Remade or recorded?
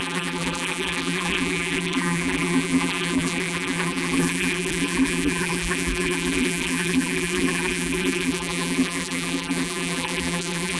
remade